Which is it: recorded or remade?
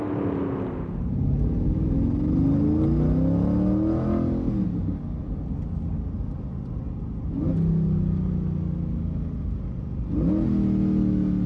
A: recorded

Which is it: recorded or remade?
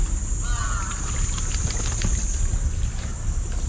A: recorded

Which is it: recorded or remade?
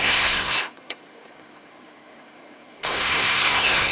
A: remade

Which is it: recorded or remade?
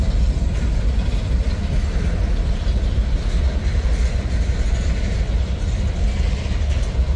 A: recorded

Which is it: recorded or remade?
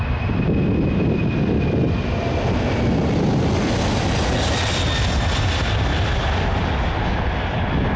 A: recorded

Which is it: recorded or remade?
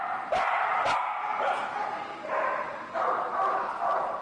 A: remade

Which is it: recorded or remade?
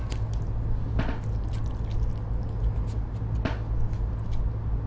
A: recorded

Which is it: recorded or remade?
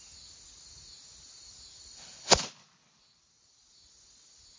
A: recorded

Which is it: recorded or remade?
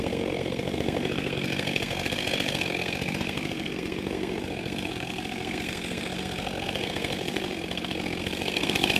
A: remade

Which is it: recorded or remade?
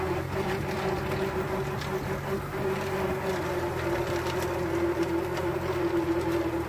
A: recorded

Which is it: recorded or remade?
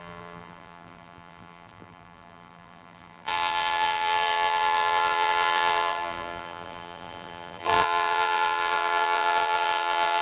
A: remade